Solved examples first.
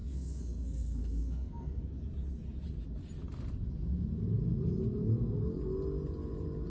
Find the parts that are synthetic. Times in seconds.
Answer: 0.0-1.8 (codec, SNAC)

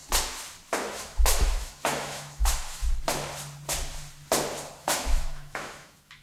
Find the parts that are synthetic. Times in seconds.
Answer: 0.9-2.8 (autoencoder, DAC-VAE); 4.8-6.2

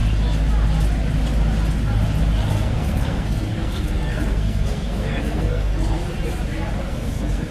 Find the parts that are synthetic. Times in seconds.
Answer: 2.5-6.0 (codec, SNAC); 6.8-7.5